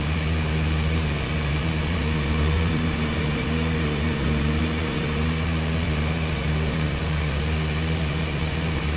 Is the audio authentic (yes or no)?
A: no